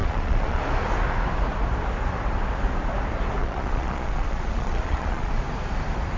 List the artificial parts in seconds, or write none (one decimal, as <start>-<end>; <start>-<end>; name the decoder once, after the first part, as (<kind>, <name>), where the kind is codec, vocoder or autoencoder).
0.0-0.6 (vocoder, Vocos); 3.4-5.3